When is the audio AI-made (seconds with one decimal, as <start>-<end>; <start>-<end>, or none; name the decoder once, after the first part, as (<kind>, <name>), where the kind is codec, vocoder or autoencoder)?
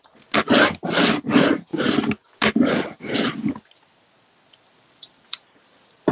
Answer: none